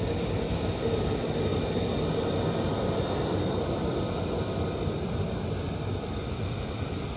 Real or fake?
real